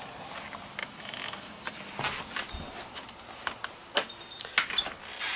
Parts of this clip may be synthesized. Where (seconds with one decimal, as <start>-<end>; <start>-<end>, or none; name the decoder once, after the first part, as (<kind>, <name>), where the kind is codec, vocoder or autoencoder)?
0.8-1.7 (autoencoder, DAC-VAE)